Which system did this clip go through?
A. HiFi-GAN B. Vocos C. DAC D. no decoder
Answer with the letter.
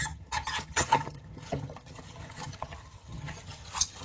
A